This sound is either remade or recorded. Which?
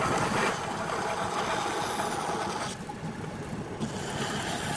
recorded